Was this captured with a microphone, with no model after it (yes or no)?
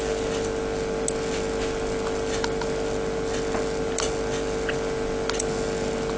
yes